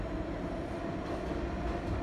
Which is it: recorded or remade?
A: recorded